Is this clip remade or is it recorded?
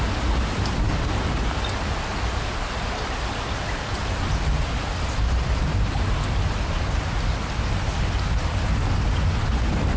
recorded